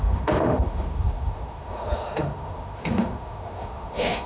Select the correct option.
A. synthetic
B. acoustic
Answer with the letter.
A